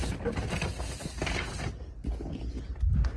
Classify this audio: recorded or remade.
recorded